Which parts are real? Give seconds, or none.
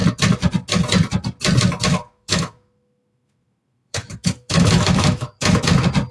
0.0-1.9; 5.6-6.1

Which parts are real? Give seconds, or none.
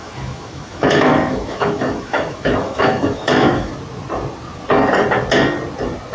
3.7-6.1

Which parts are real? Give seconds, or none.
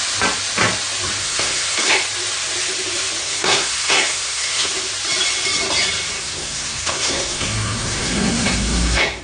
0.0-1.2; 1.9-3.2; 4.7-6.2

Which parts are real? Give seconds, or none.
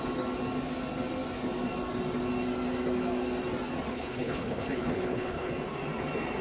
0.0-3.9; 5.5-6.4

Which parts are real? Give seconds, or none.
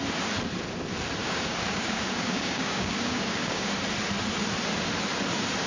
0.0-1.2; 3.7-5.7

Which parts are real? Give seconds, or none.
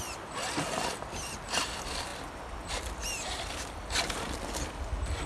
0.0-5.3